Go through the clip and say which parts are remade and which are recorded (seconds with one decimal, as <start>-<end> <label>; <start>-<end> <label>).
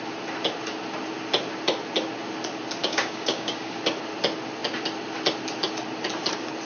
0.0-2.8 recorded; 2.8-3.8 remade; 3.8-6.6 recorded